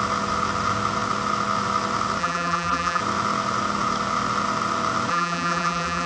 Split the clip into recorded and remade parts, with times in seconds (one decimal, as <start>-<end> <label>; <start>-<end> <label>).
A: 0.0-2.2 recorded; 2.2-3.0 remade; 3.0-5.1 recorded; 5.1-6.1 remade